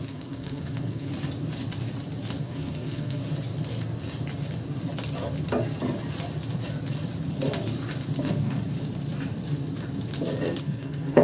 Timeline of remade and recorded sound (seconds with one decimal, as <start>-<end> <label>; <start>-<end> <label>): 0.0-1.1 remade; 1.1-2.4 recorded; 2.4-3.2 remade; 3.2-8.2 recorded; 8.2-8.6 remade; 8.6-10.6 recorded; 10.6-11.2 remade